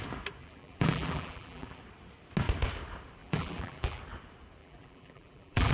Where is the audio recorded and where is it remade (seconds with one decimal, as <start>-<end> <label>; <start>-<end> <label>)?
0.0-0.4 recorded; 0.4-1.8 remade; 1.8-3.2 recorded; 3.2-4.0 remade; 4.0-4.6 recorded; 4.6-5.7 remade